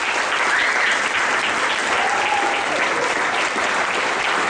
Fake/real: fake